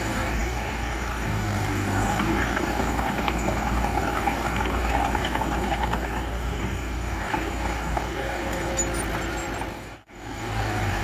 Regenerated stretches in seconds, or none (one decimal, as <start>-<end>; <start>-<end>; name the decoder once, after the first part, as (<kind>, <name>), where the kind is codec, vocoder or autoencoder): 0.0-8.7 (codec, DAC); 9.7-11.0